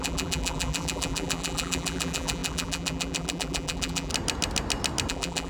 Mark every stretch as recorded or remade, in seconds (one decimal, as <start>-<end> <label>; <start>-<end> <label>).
0.0-4.1 remade; 4.1-5.1 recorded; 5.1-5.5 remade